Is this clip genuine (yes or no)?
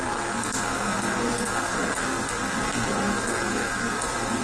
no